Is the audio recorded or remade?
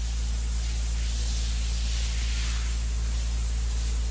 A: recorded